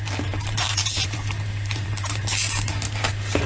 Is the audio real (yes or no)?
no